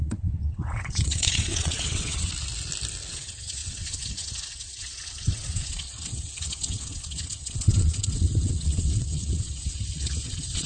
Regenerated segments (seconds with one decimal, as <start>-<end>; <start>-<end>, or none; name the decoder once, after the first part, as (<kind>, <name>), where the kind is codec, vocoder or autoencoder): 0.0-2.3 (vocoder, WaveNeXt); 3.1-10.7